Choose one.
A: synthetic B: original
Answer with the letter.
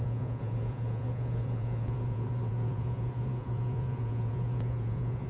A